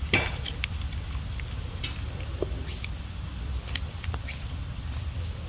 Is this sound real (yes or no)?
yes